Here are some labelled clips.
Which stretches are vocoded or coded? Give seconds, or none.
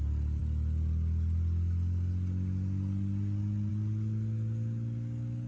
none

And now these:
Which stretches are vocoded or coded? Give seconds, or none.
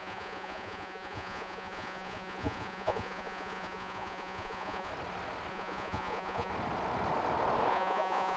0.0-4.9 (vocoder, Vocos); 5.5-6.5; 7.7-8.4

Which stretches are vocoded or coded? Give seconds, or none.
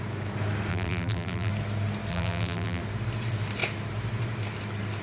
0.7-1.5 (vocoder, BigVGAN v2); 2.1-2.8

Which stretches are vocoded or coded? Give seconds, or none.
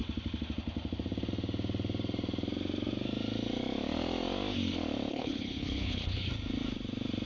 5.1-6.3 (codec, HILCodec)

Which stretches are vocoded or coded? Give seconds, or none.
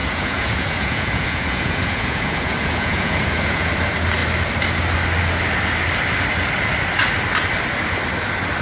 0.0-3.7 (vocoder, Vocos)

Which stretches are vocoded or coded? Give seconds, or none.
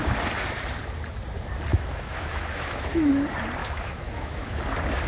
1.7-3.1 (autoencoder, DAC-VAE); 3.6-4.6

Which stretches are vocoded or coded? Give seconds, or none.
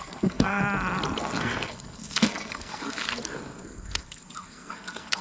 0.0-0.6 (codec, SNAC); 1.2-5.2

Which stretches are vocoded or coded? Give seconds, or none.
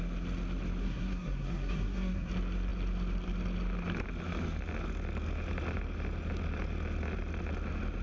0.8-2.3 (codec, SNAC)